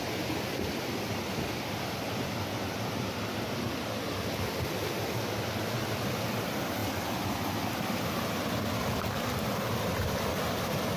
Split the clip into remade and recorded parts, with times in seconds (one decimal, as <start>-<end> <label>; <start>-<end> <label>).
0.0-11.0 recorded